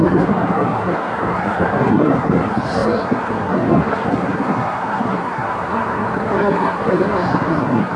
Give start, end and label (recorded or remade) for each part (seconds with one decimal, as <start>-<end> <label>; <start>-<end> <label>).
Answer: 0.0-8.0 remade

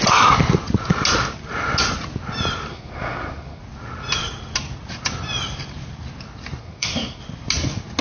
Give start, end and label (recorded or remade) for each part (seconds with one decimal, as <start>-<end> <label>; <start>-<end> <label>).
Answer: 0.0-2.7 recorded; 2.7-3.6 remade; 3.6-6.6 recorded; 6.6-7.2 remade; 7.2-8.0 recorded

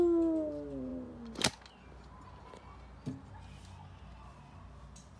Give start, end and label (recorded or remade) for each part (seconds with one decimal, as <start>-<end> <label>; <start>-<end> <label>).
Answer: 0.0-5.2 recorded

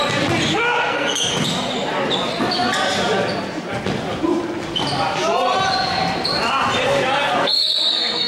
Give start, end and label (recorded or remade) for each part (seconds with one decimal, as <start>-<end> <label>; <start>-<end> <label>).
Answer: 0.0-0.5 recorded; 0.5-1.3 remade; 1.3-7.4 recorded; 7.4-8.3 remade

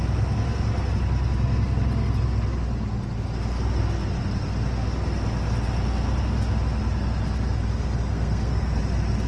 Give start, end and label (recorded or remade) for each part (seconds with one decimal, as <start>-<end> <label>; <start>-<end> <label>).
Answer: 0.0-8.1 recorded; 8.1-8.8 remade; 8.8-9.3 recorded